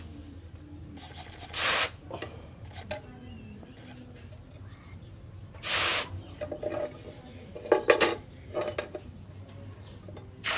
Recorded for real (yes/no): yes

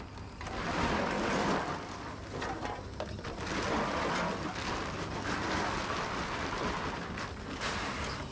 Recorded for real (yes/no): yes